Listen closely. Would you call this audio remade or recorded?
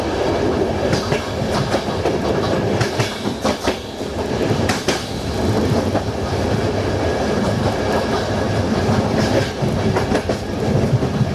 remade